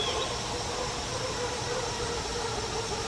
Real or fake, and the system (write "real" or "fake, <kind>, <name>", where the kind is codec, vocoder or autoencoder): real